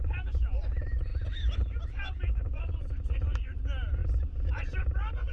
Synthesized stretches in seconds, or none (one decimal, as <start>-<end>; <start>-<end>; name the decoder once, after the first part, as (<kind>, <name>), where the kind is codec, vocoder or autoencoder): 4.0-4.5 (vocoder, BigVGAN v2)